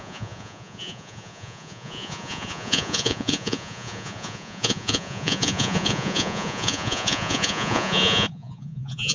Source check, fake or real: fake